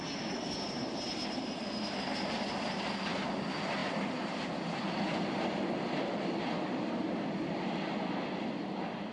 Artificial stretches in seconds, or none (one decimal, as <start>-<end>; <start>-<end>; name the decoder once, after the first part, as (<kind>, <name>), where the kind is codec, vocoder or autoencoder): none

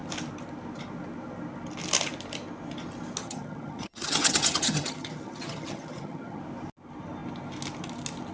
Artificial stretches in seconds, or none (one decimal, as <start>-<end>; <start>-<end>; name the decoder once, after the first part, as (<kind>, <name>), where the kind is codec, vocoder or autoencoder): 3.2-6.4 (vocoder, HiFi-GAN)